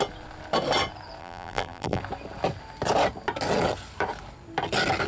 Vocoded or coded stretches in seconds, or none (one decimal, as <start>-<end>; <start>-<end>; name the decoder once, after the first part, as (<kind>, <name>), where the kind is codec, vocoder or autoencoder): 1.2-2.0 (vocoder, BigVGAN v2)